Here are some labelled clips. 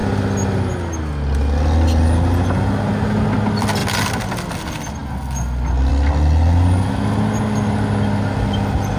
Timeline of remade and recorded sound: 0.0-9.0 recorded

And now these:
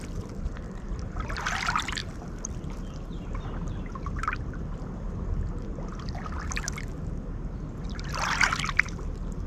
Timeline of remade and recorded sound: 0.0-5.9 remade; 5.9-6.9 recorded; 6.9-9.5 remade

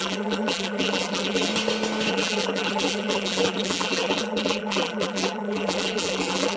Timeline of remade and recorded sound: 0.0-1.5 remade; 1.5-2.1 recorded; 2.1-6.6 remade

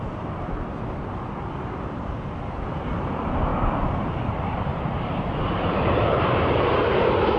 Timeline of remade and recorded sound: 0.0-3.5 recorded; 3.5-6.7 remade; 6.7-7.4 recorded

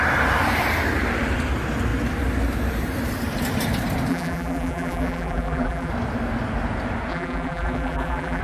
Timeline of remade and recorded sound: 0.0-4.1 recorded; 4.1-5.9 remade; 5.9-7.1 recorded; 7.1-8.4 remade

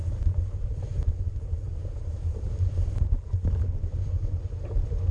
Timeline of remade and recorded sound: 0.0-1.1 remade; 1.1-1.7 recorded; 1.7-3.0 remade; 3.0-5.1 recorded

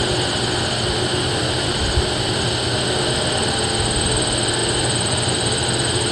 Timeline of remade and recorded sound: 0.0-4.6 recorded; 4.6-6.1 remade